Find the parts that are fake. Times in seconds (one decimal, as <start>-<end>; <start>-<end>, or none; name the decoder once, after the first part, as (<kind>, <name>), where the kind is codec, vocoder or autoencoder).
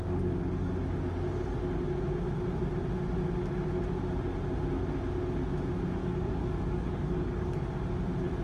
0.0-0.7 (codec, DAC); 6.0-7.6